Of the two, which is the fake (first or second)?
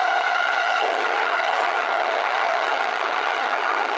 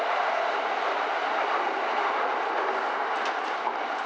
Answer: first